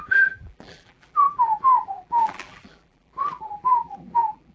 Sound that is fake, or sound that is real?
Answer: fake